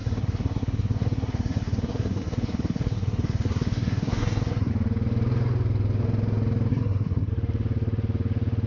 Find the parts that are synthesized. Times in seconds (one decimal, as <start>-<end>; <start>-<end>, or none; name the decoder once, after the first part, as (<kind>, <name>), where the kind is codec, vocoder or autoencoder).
0.0-4.7 (codec, SNAC); 6.7-7.3